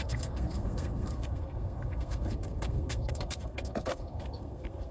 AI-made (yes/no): yes